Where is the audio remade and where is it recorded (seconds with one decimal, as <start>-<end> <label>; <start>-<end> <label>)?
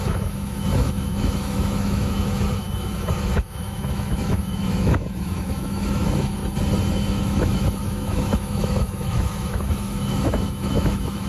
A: 0.0-6.4 remade; 6.4-6.9 recorded; 6.9-11.3 remade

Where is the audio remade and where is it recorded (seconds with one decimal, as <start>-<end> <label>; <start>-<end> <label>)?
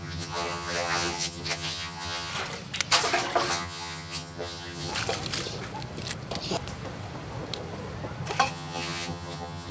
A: 0.0-2.3 remade; 2.3-3.5 recorded; 3.5-4.9 remade; 4.9-8.5 recorded; 8.5-9.7 remade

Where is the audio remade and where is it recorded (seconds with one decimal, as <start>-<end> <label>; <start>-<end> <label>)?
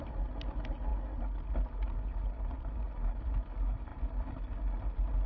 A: 0.0-5.3 recorded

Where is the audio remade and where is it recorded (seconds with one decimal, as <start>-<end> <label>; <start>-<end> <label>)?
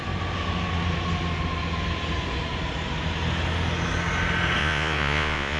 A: 0.0-4.6 recorded; 4.6-5.6 remade